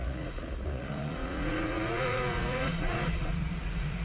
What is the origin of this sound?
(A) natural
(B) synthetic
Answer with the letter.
B